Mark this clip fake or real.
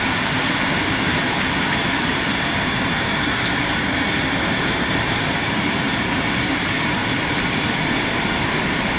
fake